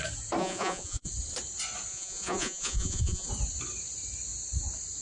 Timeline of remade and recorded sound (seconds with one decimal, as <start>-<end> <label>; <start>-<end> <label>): 0.0-0.4 recorded; 0.4-1.1 remade; 1.1-1.9 recorded; 1.9-3.3 remade; 3.3-5.0 recorded